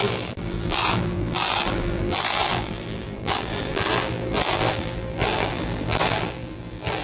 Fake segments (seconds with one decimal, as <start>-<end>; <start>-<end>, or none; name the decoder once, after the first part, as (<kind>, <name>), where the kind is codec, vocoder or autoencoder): 0.0-7.0 (vocoder, BigVGAN v2)